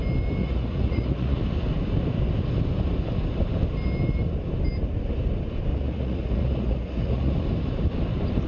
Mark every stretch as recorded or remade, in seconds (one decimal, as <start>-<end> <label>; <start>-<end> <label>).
0.0-0.4 recorded; 0.4-1.4 remade; 1.4-5.7 recorded; 5.7-7.3 remade; 7.3-8.5 recorded